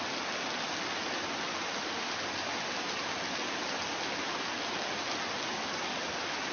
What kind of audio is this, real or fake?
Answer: real